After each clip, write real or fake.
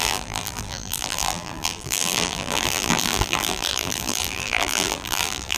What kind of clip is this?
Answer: fake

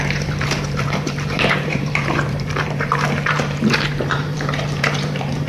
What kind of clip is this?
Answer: fake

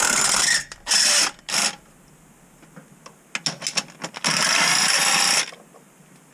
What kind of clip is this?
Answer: real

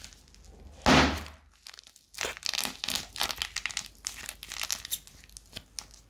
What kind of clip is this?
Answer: real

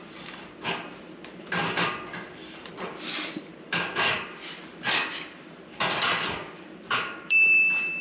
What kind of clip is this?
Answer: fake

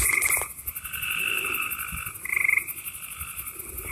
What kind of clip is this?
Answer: real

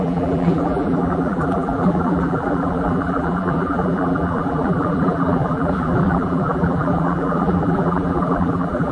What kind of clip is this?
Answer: fake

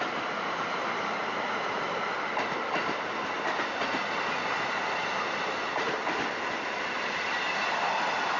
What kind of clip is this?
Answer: real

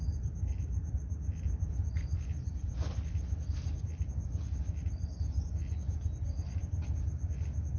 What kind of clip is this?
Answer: real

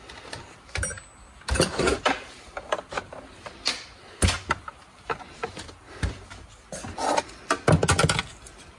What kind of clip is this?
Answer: real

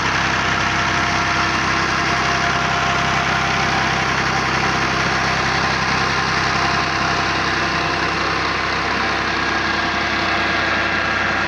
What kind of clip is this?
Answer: real